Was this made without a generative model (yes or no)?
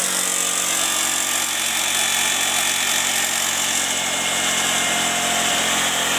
yes